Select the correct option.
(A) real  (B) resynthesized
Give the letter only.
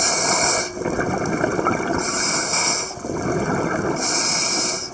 A